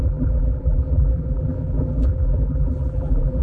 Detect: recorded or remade remade